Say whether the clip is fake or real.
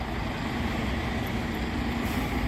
real